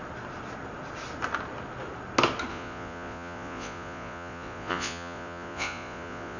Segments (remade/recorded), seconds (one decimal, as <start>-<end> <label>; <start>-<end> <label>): 0.0-2.5 recorded; 2.5-6.4 remade